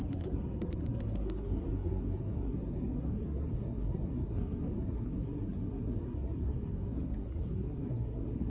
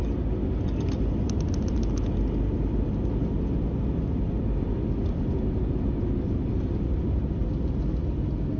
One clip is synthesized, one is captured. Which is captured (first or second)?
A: second